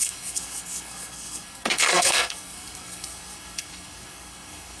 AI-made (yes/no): yes